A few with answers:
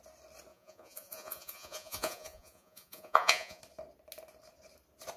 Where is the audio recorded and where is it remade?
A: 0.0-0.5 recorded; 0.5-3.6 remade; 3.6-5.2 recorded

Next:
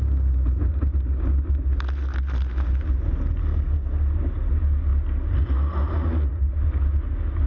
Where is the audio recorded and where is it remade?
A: 0.0-3.4 recorded; 3.4-4.0 remade; 4.0-7.5 recorded

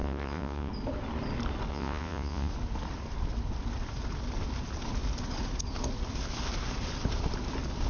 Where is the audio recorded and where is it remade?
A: 0.0-0.7 remade; 0.7-1.7 recorded; 1.7-2.5 remade; 2.5-7.9 recorded

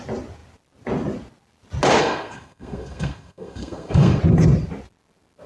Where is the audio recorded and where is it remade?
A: 0.0-2.0 recorded; 2.0-4.2 remade; 4.2-5.5 recorded

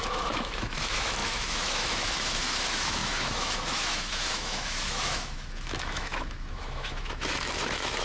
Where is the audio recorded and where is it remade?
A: 0.0-8.0 remade

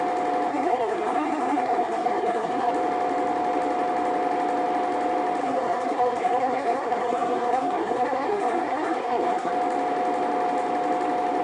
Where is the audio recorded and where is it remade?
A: 0.0-0.5 recorded; 0.5-2.7 remade; 2.7-5.4 recorded; 5.4-9.5 remade; 9.5-11.4 recorded

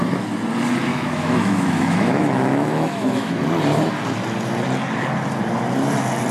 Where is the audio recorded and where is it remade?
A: 0.0-0.9 recorded; 0.9-3.4 remade; 3.4-6.3 recorded

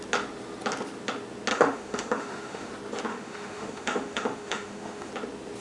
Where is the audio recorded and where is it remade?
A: 0.0-1.5 recorded; 1.5-2.7 remade; 2.7-3.1 recorded; 3.1-5.1 remade; 5.1-5.6 recorded